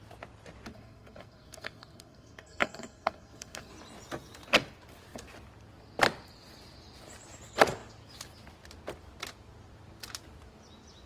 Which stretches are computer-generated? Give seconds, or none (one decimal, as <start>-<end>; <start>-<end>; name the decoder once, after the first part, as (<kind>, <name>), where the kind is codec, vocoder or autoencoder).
0.7-3.7 (codec, SNAC)